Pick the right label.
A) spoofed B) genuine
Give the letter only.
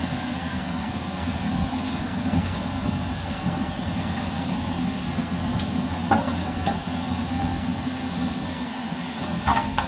A